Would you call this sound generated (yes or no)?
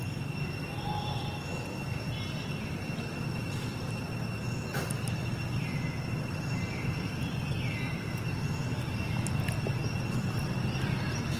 no